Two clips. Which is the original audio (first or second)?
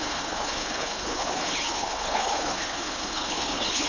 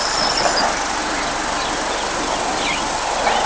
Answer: second